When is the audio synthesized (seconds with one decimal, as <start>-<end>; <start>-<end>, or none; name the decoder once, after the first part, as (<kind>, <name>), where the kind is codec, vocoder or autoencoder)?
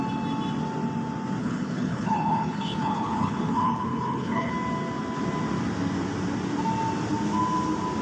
1.4-4.5 (codec, HILCodec)